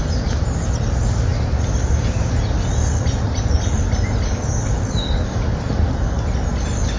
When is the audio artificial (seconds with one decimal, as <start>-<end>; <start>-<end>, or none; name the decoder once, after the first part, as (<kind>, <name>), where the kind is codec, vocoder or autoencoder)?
none